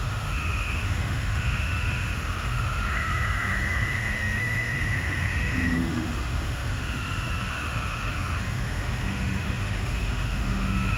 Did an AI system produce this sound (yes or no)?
yes